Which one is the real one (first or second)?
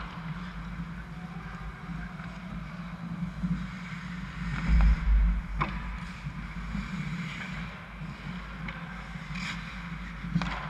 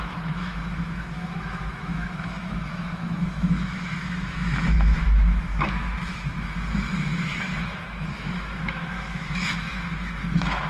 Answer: first